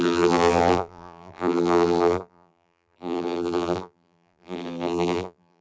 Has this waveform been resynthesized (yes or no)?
yes